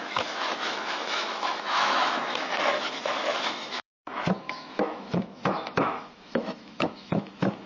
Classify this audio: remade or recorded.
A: remade